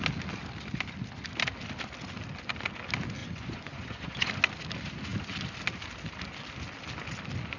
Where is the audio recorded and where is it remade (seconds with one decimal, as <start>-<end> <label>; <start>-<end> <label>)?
0.0-3.2 recorded; 3.2-4.3 remade; 4.3-7.6 recorded